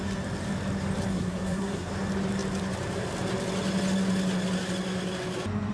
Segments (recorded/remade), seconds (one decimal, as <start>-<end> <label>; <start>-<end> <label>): 0.0-1.1 recorded; 1.1-1.9 remade; 1.9-5.7 recorded